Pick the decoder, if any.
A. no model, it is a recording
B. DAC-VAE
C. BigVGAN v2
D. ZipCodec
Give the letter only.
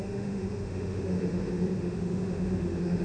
B